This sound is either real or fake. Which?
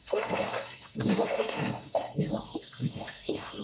fake